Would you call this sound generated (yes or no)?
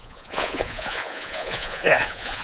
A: yes